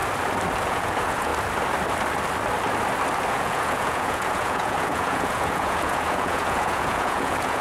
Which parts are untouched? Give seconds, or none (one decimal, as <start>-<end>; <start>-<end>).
0.0-0.6; 1.3-3.3